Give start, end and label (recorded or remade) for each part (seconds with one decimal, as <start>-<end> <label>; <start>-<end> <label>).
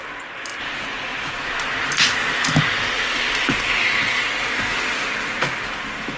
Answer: 0.0-6.2 recorded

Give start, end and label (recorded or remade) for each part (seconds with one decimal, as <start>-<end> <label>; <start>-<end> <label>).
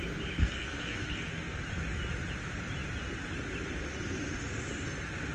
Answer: 0.0-0.4 recorded; 0.4-1.6 remade; 1.6-5.3 recorded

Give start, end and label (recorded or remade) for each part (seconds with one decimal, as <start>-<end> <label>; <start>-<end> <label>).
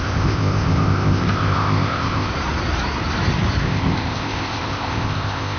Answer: 0.0-2.3 remade; 2.3-3.6 recorded; 3.6-5.6 remade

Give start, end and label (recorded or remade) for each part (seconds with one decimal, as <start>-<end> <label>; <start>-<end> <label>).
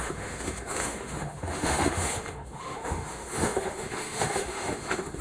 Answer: 0.0-5.2 remade